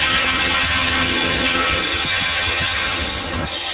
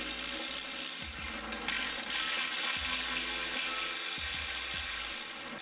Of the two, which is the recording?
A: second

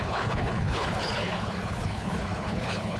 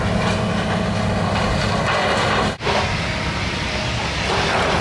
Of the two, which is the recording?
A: second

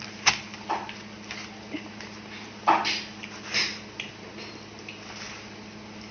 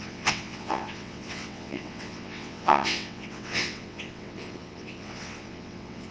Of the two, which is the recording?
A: first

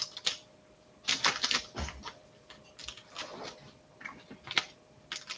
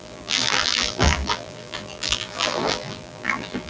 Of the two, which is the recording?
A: first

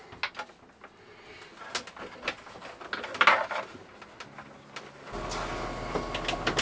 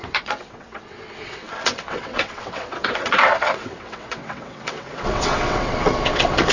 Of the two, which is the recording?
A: first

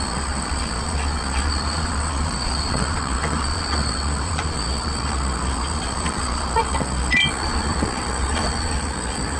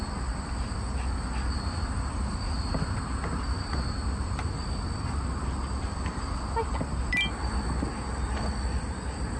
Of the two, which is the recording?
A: second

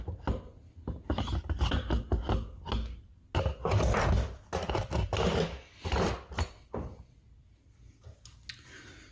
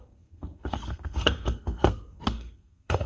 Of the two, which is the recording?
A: first